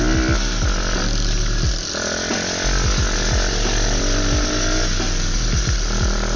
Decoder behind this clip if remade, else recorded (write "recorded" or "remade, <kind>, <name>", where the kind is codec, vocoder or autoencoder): recorded